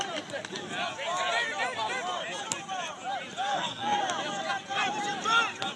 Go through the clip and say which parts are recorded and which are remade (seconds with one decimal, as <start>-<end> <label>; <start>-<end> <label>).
0.0-3.5 recorded; 3.5-4.0 remade; 4.0-5.8 recorded